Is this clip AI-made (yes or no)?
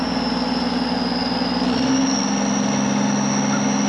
no